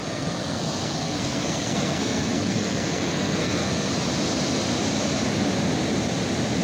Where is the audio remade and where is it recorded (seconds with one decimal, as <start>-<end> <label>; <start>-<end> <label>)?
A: 0.0-3.9 remade; 3.9-6.6 recorded